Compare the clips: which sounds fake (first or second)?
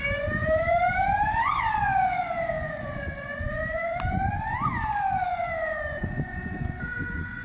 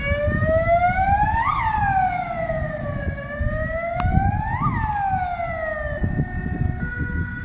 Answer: first